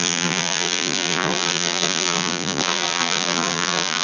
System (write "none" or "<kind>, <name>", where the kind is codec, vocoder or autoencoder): vocoder, BigVGAN v2